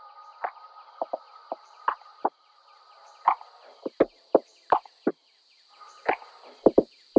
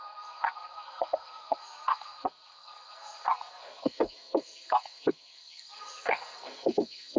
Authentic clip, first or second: first